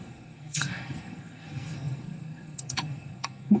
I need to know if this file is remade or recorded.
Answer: remade